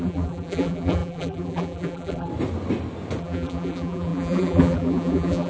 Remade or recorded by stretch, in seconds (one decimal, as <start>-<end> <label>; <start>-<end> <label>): 0.0-2.3 remade; 2.3-3.2 recorded; 3.2-5.5 remade